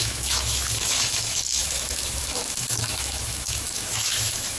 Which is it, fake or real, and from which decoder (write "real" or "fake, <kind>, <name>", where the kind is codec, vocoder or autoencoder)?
fake, autoencoder, DAC-VAE